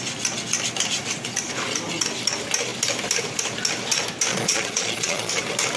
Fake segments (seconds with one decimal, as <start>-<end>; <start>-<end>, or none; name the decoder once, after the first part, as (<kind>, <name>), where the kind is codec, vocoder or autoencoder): 4.3-5.3 (vocoder, Vocos)